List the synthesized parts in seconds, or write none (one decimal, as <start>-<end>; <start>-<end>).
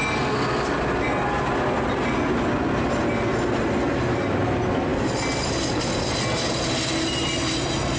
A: none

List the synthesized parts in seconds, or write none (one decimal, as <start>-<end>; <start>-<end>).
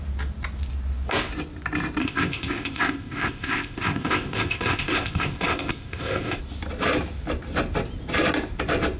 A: 2.0-6.4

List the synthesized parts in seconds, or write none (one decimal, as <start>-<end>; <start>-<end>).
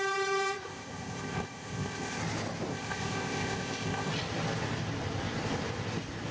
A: 0.6-2.2; 2.7-4.1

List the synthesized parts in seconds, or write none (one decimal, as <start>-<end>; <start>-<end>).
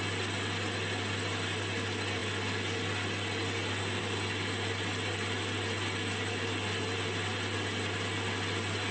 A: none